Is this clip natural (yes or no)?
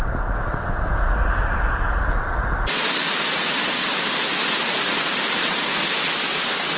yes